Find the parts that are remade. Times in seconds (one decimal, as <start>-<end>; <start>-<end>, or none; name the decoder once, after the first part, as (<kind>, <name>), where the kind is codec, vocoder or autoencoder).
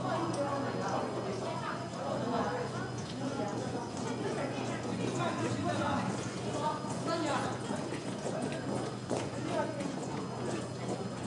0.0-11.3 (vocoder, Vocos)